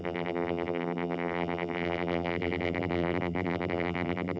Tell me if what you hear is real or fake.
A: fake